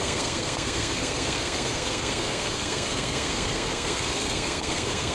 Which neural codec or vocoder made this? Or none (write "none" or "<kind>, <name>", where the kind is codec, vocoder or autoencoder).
codec, SNAC